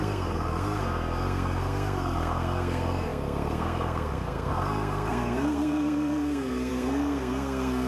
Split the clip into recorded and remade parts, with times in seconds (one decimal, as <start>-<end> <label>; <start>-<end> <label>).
0.0-7.9 remade

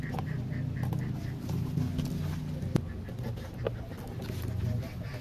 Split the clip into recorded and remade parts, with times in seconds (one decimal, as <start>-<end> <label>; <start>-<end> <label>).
0.0-5.2 recorded

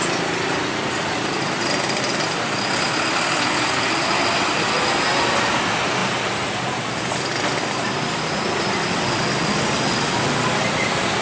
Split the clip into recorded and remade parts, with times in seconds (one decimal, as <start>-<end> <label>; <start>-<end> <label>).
0.0-11.2 recorded

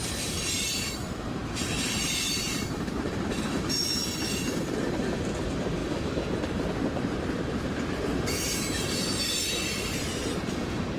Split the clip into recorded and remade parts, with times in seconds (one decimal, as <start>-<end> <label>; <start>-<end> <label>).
0.0-11.0 remade

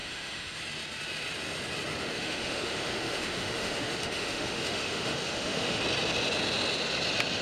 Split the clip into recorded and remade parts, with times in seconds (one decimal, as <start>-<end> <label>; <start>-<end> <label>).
0.0-0.6 remade; 0.6-2.0 recorded; 2.0-5.8 remade; 5.8-7.4 recorded

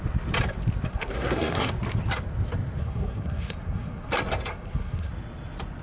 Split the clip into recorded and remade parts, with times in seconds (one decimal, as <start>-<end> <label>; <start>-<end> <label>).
0.0-0.9 recorded; 0.9-1.7 remade; 1.7-2.8 recorded; 2.8-4.1 remade; 4.1-4.5 recorded; 4.5-5.1 remade; 5.1-5.8 recorded